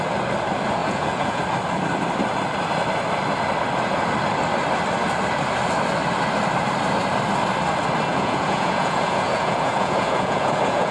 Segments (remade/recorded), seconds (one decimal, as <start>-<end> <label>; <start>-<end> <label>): 0.0-0.8 recorded; 0.8-1.4 remade; 1.4-8.1 recorded; 8.1-10.9 remade